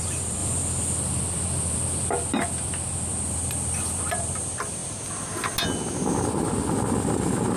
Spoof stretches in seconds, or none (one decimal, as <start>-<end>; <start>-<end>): none